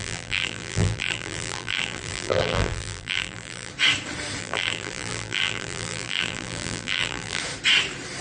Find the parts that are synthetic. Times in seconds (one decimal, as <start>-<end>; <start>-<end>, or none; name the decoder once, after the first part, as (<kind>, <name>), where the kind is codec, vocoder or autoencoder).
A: 0.0-3.7 (vocoder, BigVGAN v2); 4.4-7.4